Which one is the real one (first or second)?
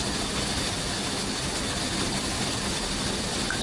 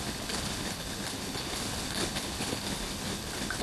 first